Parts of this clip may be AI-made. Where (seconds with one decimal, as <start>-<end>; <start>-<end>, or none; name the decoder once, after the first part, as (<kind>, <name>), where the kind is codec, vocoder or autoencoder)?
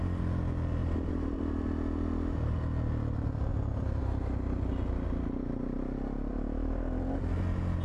0.8-1.5 (vocoder, BigVGAN v2); 3.5-4.0; 6.3-7.2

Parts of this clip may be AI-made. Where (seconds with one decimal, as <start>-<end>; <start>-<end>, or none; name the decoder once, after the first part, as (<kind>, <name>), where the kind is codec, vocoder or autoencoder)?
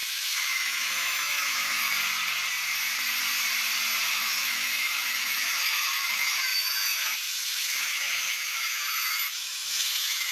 0.0-1.9 (autoencoder, DAC-VAE); 4.0-10.3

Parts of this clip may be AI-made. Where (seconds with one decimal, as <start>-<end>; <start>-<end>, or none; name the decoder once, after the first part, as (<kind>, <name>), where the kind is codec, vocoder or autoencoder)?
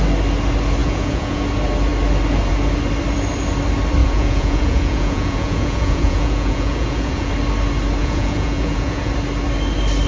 0.8-1.4 (vocoder, Vocos); 4.0-7.3; 8.0-9.1